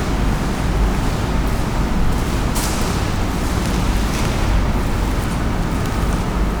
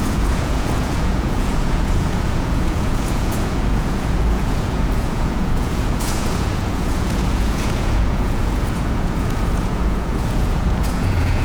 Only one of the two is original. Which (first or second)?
first